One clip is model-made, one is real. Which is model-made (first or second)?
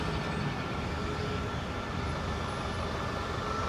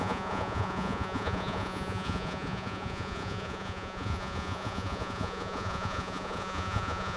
second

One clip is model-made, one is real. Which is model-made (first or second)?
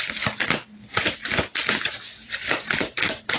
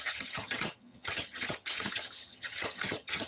second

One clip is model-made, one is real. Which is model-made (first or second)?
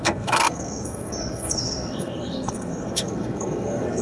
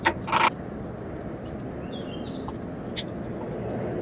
first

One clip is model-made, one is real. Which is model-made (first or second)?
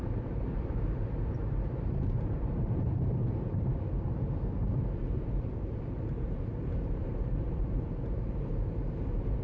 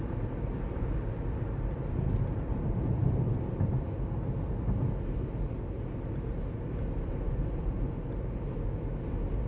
first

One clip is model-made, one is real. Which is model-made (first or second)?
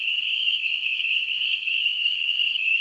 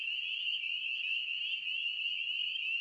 first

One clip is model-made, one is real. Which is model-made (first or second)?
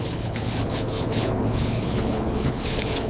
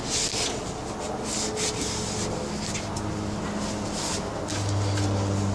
first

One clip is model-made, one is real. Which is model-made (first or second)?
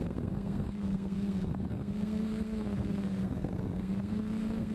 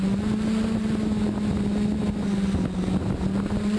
first